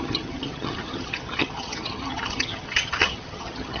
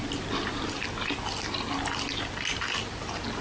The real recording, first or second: second